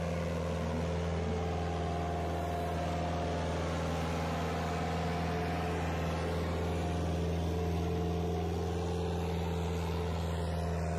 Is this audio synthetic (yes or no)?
no